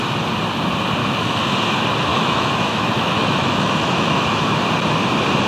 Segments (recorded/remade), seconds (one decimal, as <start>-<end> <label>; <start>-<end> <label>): 0.0-1.0 recorded; 1.0-1.5 remade; 1.5-2.1 recorded; 2.1-4.6 remade; 4.6-5.5 recorded